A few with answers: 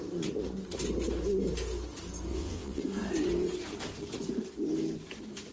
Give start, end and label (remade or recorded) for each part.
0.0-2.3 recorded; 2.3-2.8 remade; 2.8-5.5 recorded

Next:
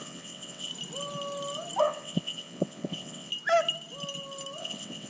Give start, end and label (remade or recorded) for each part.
0.0-0.7 remade; 0.7-1.8 recorded; 1.8-3.3 remade; 3.3-4.6 recorded; 4.6-5.1 remade

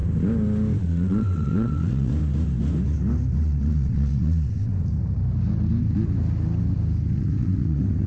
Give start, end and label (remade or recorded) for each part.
0.0-0.8 recorded; 0.8-2.1 remade; 2.1-3.4 recorded; 3.4-4.7 remade; 4.7-7.2 recorded; 7.2-8.1 remade

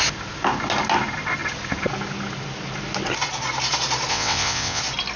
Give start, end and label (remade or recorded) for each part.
0.0-4.1 recorded; 4.1-4.8 remade; 4.8-5.2 recorded

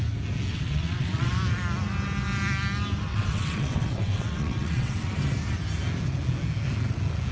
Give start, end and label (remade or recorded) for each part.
0.0-0.5 recorded; 0.5-1.3 remade; 1.3-3.1 recorded; 3.1-5.1 remade; 5.1-7.3 recorded

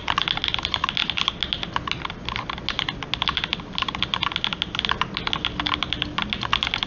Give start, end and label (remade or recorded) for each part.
0.0-6.9 recorded

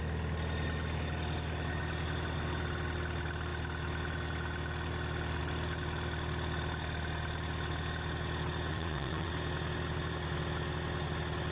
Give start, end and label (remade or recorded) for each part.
0.0-8.7 recorded; 8.7-9.3 remade; 9.3-11.5 recorded